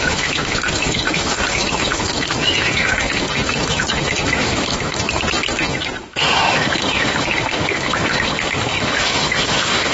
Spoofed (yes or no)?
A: yes